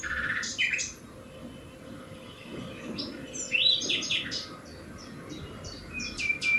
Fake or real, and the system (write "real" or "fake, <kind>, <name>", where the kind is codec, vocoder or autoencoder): fake, vocoder, BigVGAN v2